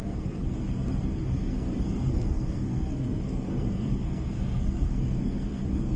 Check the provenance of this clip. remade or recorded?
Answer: remade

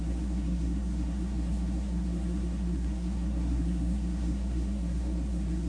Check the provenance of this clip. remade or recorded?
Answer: remade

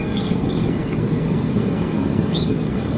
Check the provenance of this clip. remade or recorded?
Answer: remade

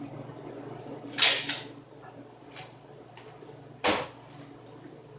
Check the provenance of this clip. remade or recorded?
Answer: recorded